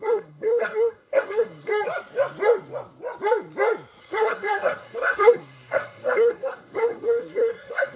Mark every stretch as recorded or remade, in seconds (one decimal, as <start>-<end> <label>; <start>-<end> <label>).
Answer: 0.0-1.7 remade; 1.7-4.0 recorded; 4.0-8.0 remade